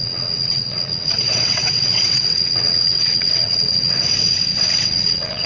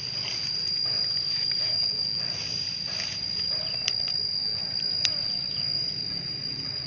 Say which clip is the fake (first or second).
first